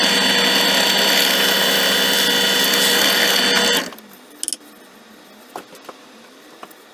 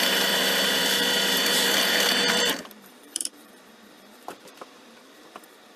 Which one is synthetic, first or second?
second